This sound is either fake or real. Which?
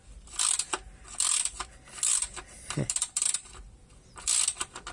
real